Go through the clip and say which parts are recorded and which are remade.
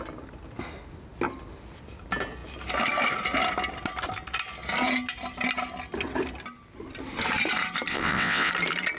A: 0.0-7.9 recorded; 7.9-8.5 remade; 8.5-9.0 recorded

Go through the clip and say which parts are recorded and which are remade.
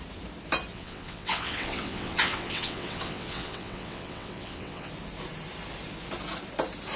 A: 0.0-0.7 recorded; 0.7-4.9 remade; 4.9-7.0 recorded